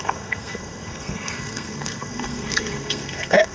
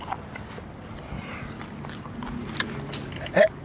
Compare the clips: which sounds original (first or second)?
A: second